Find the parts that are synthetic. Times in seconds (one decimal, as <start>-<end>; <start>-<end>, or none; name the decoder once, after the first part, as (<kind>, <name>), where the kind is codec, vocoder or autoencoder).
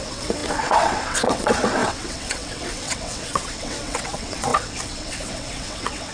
0.0-6.1 (vocoder, WaveNeXt)